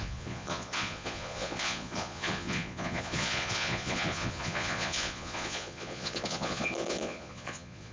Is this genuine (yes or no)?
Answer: no